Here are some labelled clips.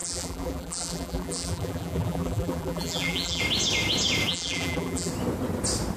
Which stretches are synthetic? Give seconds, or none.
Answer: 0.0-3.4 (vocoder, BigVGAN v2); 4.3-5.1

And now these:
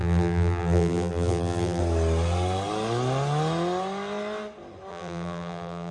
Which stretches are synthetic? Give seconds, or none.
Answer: 0.0-1.8 (vocoder, BigVGAN v2); 4.9-5.9

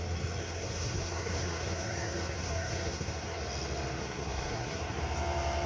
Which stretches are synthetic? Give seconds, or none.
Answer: 0.4-3.4 (codec, SNAC); 4.0-5.0